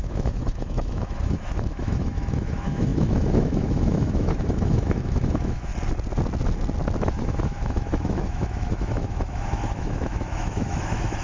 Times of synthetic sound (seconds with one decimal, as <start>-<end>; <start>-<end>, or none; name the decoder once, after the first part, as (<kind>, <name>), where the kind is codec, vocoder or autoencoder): 0.0-5.7 (autoencoder, DAC-VAE); 7.0-11.2